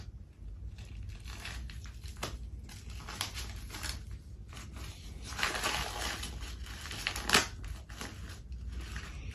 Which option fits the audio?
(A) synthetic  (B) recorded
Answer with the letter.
B